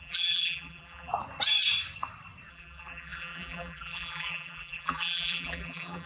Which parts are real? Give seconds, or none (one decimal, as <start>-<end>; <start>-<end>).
1.1-2.5